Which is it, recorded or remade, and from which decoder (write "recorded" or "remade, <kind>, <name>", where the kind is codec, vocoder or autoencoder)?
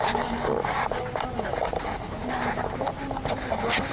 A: recorded